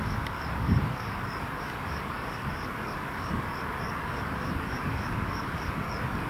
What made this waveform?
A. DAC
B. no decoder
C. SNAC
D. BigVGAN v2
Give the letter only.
A